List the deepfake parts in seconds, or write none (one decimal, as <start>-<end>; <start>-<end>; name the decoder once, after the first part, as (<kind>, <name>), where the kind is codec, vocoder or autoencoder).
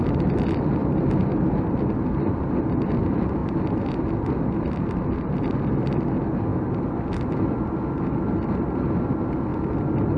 none